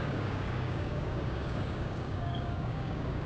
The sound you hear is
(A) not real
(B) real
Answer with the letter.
A